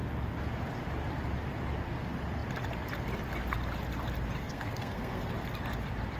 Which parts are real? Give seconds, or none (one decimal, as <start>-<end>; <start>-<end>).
0.0-4.4; 5.3-6.2